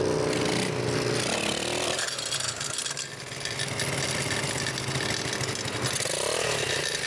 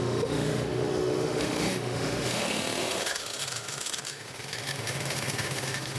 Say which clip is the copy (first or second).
second